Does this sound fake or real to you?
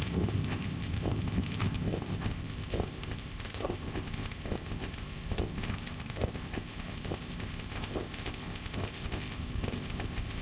fake